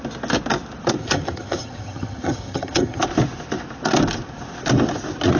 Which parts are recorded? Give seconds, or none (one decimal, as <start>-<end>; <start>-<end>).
0.0-1.0; 3.0-5.4